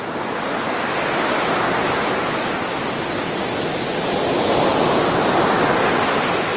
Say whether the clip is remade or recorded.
recorded